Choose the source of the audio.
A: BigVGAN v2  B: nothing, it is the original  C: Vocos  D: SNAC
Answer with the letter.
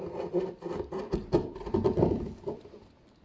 B